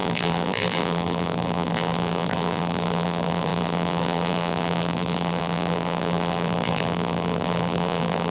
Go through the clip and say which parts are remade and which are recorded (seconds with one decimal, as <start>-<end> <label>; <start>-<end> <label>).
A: 0.0-8.3 remade